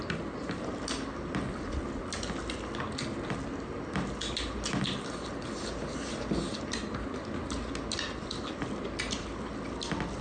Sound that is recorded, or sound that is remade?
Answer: recorded